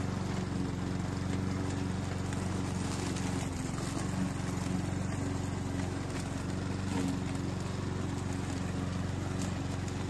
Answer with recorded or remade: recorded